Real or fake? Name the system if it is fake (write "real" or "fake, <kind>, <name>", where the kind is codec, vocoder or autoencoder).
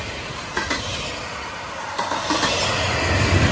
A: real